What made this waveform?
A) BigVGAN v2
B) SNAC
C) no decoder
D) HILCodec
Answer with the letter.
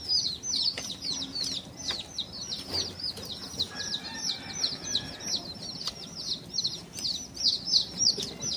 C